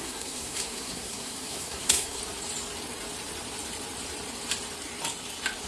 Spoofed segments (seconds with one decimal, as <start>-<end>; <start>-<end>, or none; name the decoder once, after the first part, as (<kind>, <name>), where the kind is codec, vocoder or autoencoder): 0.0-2.2 (codec, SNAC)